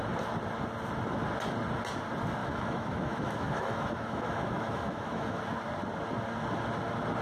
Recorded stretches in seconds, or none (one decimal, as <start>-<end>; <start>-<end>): 0.0-2.4; 5.4-7.2